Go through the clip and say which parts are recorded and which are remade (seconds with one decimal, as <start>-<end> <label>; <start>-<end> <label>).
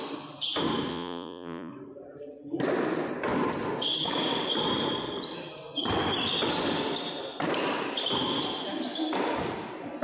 0.0-0.9 recorded; 0.9-1.7 remade; 1.7-10.0 recorded